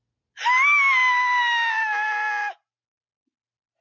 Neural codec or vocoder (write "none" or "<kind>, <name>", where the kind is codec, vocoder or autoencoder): none